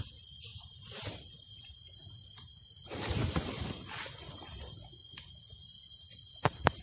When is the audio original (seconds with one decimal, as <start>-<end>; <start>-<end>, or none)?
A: 3.2-5.3